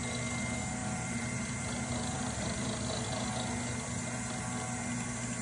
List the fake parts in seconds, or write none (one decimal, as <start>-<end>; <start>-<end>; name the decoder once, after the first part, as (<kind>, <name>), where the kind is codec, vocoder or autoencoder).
0.8-2.9 (vocoder, BigVGAN v2)